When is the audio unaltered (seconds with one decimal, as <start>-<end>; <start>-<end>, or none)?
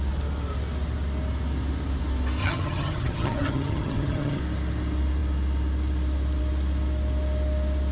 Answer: 0.0-2.4; 4.4-7.9